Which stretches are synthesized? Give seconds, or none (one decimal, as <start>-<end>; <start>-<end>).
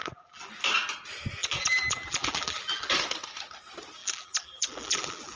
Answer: 0.0-0.5; 1.4-2.9; 4.0-5.4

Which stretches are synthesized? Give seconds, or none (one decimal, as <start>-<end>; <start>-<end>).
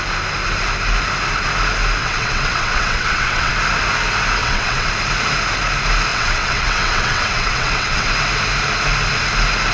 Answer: 2.0-3.5; 4.4-4.9; 6.1-8.1